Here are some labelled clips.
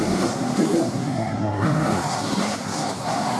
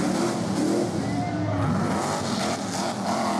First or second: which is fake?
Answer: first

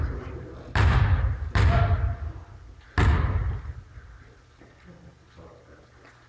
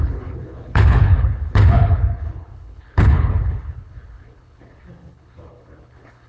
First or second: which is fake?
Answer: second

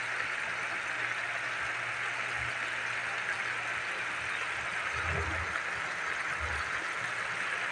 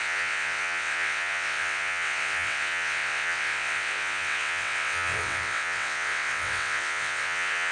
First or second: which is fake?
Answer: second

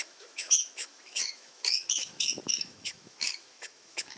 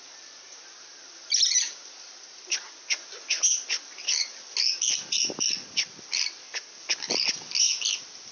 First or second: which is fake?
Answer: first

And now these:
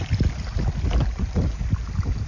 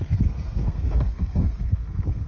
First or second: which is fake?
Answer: second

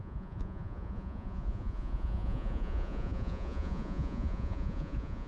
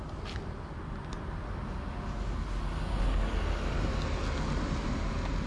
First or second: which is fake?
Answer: first